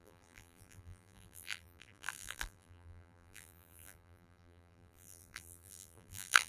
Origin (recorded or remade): remade